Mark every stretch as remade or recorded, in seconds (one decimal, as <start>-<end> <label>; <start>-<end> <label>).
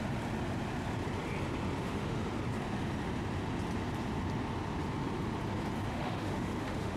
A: 0.0-1.8 recorded; 1.8-2.3 remade; 2.3-5.9 recorded; 5.9-7.0 remade